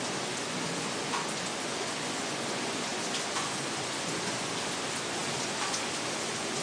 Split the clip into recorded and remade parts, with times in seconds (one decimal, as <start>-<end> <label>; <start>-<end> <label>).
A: 0.0-6.6 remade